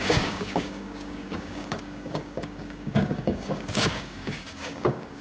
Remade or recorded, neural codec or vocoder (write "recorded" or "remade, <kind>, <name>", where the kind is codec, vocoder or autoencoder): remade, codec, DAC